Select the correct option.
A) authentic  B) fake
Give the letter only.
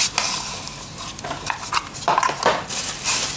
A